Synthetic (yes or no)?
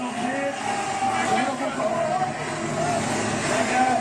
no